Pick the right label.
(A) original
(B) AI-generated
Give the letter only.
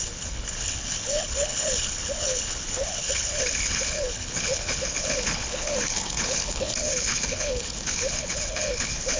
B